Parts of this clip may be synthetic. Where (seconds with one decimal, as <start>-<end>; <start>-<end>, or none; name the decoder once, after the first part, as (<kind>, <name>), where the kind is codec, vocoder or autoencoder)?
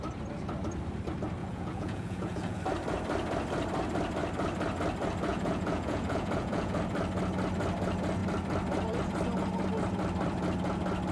1.4-2.6 (vocoder, Vocos); 5.3-6.8